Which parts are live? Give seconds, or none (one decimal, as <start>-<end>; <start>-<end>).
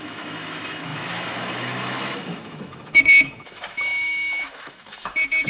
none